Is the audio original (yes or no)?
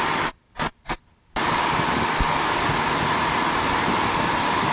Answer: yes